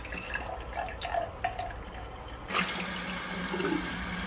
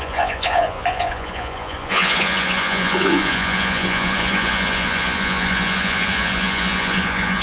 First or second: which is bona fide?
first